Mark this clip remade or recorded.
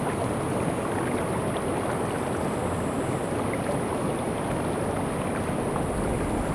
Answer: recorded